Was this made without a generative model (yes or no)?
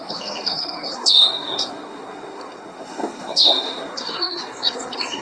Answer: no